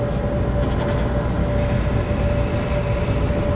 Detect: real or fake real